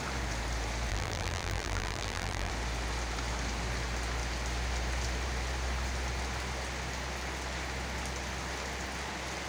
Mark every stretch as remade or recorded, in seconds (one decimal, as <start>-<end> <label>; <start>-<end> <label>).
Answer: 0.0-0.9 recorded; 0.9-2.5 remade; 2.5-9.5 recorded

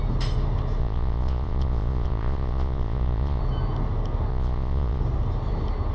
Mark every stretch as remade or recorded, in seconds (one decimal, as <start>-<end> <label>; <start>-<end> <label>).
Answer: 0.0-0.8 recorded; 0.8-3.4 remade; 3.4-4.3 recorded; 4.3-5.0 remade; 5.0-5.9 recorded

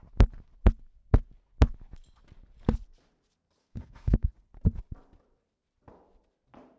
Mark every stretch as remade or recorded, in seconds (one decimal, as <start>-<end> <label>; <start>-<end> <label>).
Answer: 0.0-3.6 recorded; 3.6-4.3 remade; 4.3-6.8 recorded

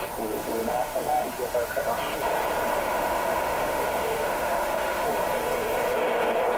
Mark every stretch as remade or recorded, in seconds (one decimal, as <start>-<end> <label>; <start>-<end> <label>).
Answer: 0.0-0.6 recorded; 0.6-1.3 remade; 1.3-2.8 recorded; 2.8-5.1 remade; 5.1-6.6 recorded

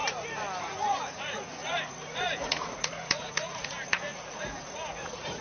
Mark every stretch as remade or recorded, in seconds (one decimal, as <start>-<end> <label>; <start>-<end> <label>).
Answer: 0.0-0.6 recorded; 0.6-5.4 remade

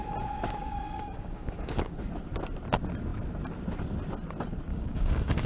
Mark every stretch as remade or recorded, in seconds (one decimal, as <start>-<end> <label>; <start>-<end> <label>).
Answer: 0.0-0.6 recorded; 0.6-1.9 remade; 1.9-4.7 recorded; 4.7-5.5 remade